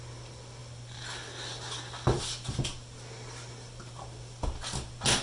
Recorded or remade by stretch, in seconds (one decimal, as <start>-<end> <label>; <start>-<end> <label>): 0.0-5.2 recorded

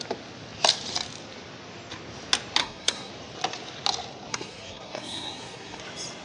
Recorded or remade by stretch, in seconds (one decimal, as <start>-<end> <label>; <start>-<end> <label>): 0.0-2.6 recorded; 2.6-3.1 remade; 3.1-4.3 recorded; 4.3-5.8 remade; 5.8-6.2 recorded

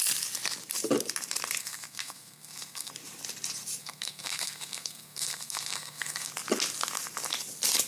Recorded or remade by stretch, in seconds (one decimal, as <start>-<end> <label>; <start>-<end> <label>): 0.0-1.6 recorded; 1.6-2.9 remade; 2.9-3.8 recorded; 3.8-6.3 remade; 6.3-7.9 recorded

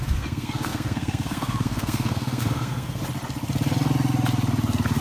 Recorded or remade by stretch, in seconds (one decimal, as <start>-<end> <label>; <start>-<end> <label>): 0.0-3.0 remade; 3.0-5.0 recorded

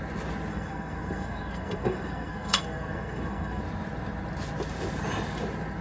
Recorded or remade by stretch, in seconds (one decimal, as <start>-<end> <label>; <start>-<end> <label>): 0.0-0.5 recorded; 0.5-3.6 remade; 3.6-5.8 recorded

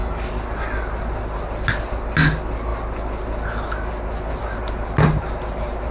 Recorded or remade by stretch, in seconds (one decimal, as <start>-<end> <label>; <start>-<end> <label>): 0.0-5.9 recorded

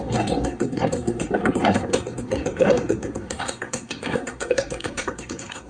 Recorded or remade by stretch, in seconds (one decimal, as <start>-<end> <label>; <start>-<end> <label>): 0.0-5.7 remade